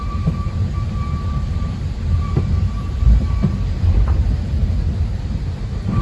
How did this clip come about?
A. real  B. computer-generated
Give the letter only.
B